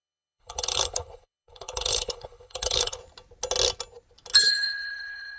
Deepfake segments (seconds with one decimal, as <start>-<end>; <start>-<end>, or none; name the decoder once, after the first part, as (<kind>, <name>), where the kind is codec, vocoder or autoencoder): 0.0-3.0 (codec, HILCodec); 4.4-5.4